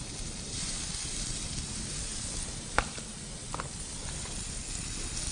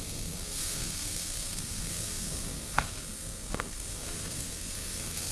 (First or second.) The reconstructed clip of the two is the second